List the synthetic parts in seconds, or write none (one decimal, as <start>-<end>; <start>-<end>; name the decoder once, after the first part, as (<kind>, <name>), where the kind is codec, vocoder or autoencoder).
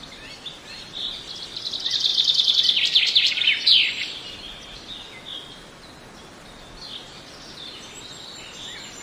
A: 2.1-3.3 (vocoder, BigVGAN v2)